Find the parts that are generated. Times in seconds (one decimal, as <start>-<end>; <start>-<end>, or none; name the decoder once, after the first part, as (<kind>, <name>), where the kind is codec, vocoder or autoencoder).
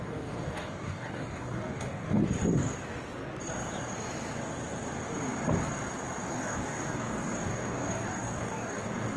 0.0-2.2 (codec, DAC); 6.3-9.2